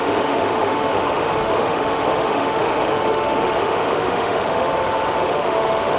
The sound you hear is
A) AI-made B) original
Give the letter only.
A